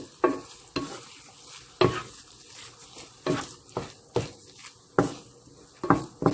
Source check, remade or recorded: recorded